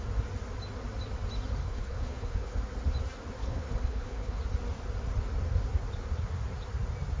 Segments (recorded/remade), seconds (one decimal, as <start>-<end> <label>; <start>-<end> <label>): 0.0-1.6 recorded; 1.6-2.6 remade; 2.6-3.4 recorded; 3.4-4.4 remade; 4.4-7.2 recorded